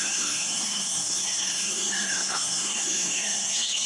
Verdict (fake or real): fake